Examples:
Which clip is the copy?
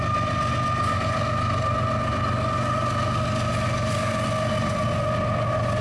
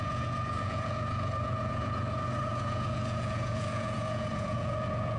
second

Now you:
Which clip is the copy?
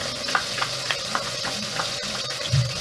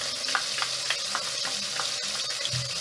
first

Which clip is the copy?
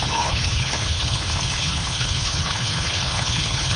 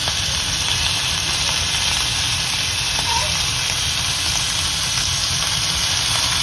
first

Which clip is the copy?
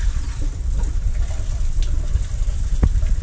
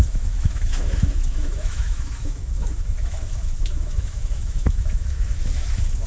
second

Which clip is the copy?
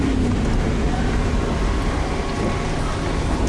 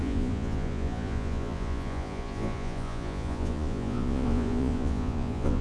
second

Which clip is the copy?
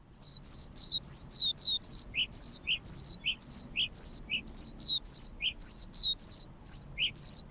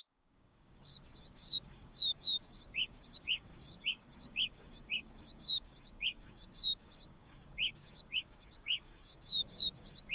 second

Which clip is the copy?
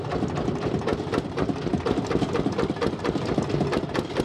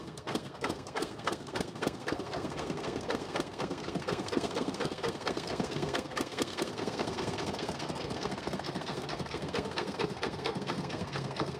second